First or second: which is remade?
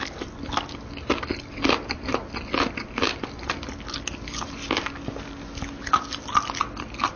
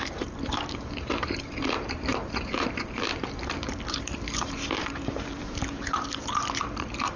second